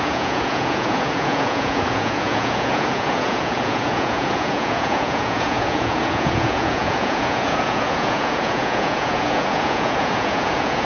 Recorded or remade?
remade